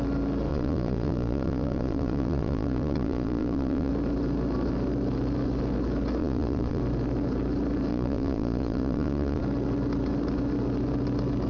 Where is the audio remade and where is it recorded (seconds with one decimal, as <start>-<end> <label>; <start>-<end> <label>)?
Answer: 0.0-0.5 recorded; 0.5-3.9 remade; 3.9-6.2 recorded; 6.2-6.8 remade; 6.8-7.9 recorded; 7.9-9.4 remade; 9.4-11.5 recorded